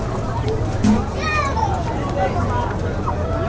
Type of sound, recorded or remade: recorded